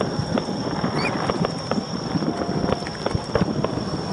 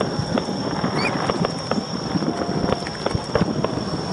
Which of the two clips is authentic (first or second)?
second